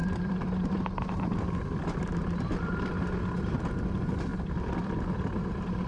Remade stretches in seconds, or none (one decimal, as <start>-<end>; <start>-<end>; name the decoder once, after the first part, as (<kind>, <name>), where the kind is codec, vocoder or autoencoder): 0.0-3.5 (vocoder, BigVGAN v2); 4.3-5.9